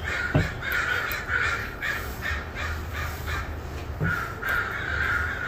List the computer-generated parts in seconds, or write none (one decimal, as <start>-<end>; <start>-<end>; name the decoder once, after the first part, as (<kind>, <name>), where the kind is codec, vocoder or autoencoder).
1.6-2.3 (codec, DAC); 2.9-3.4